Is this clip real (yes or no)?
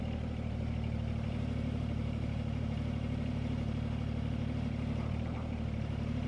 no